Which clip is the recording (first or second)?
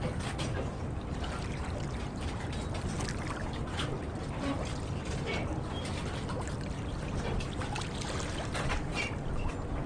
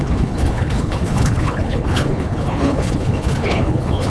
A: first